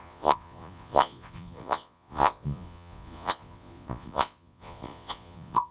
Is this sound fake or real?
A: fake